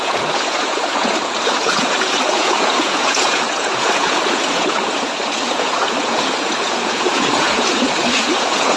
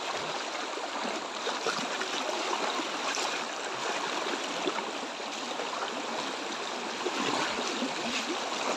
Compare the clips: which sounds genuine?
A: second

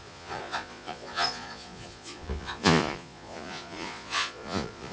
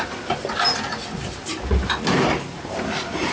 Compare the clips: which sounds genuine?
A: second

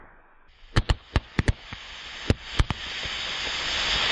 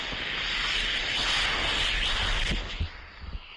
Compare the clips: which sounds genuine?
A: second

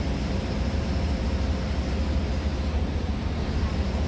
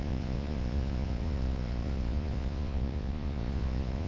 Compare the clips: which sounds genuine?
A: first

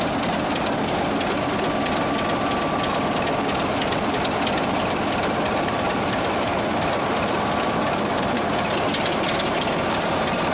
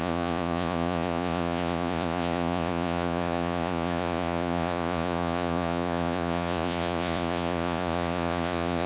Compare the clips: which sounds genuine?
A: first